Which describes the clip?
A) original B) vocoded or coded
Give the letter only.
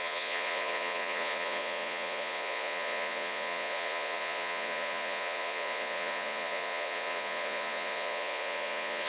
B